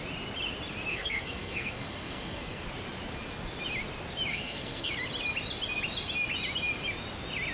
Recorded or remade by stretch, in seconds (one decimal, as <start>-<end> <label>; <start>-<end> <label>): 0.0-0.9 recorded; 0.9-2.6 remade; 2.6-4.3 recorded; 4.3-4.9 remade; 4.9-7.5 recorded